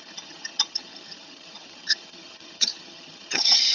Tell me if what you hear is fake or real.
fake